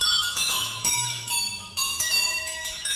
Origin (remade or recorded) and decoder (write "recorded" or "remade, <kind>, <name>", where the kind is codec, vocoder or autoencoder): remade, autoencoder, DAC-VAE